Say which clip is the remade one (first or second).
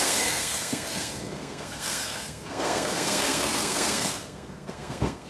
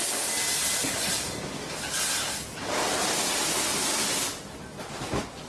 first